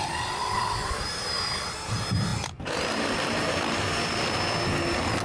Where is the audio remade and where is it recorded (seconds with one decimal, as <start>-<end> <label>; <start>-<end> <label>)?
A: 0.0-0.8 recorded; 0.8-1.6 remade; 1.6-5.2 recorded